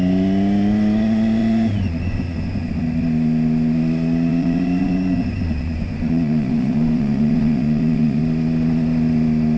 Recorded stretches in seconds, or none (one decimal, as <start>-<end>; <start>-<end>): 0.0-1.4; 2.7-4.3; 8.2-9.6